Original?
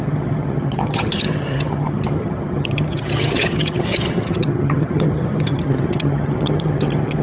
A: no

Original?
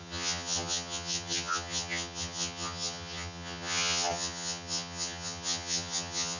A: no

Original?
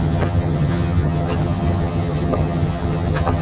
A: no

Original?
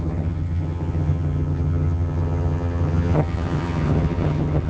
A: no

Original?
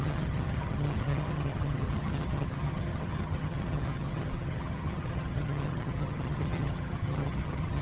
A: no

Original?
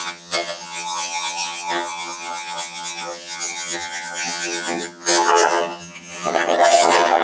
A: no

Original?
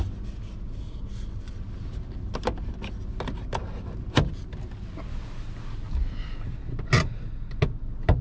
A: yes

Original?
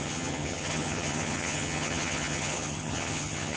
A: no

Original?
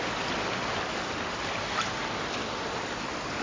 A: yes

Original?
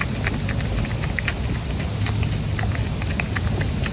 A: yes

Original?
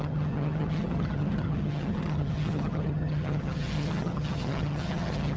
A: no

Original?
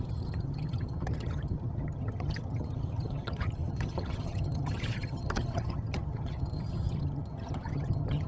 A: no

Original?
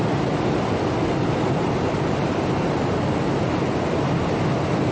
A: yes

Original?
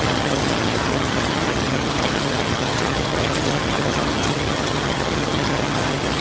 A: no